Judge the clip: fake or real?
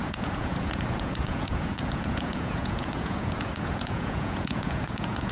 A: fake